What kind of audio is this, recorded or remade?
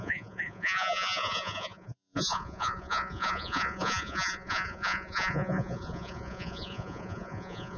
remade